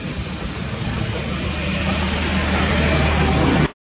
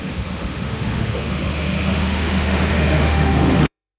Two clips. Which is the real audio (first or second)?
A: first